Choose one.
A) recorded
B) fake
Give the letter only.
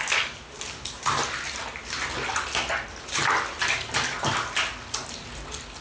A